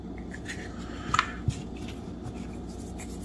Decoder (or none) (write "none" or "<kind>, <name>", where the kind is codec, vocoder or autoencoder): none